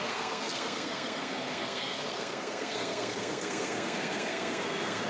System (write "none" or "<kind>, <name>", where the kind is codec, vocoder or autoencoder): codec, SNAC